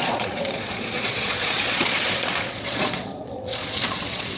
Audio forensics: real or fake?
fake